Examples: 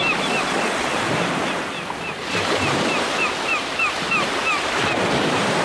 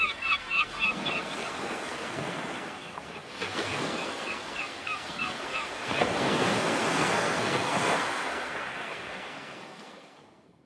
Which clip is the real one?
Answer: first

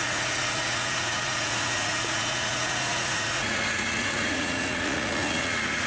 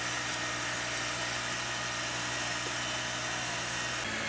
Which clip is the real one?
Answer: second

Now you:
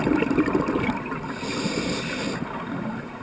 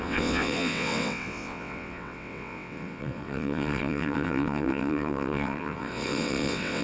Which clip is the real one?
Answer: first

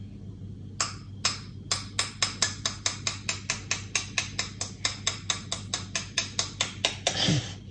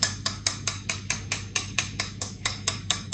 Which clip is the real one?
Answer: first